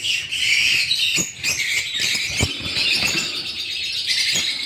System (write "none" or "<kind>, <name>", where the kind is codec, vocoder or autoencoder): none